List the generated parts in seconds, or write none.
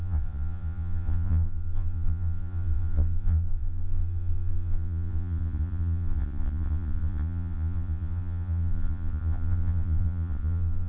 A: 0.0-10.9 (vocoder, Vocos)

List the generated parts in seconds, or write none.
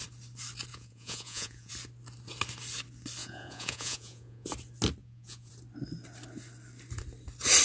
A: 0.7-1.7 (vocoder, Vocos); 3.2-4.5; 5.0-5.5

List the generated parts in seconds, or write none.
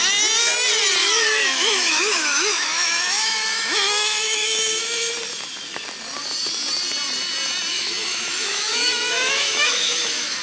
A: 1.0-5.1 (autoencoder, DAC-VAE); 7.7-10.4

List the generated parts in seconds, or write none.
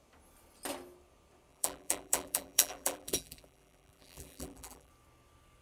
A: 1.5-4.9 (vocoder, BigVGAN v2)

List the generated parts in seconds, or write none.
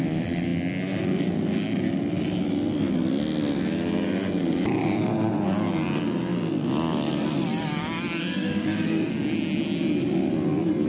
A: 8.2-9.1 (codec, SNAC)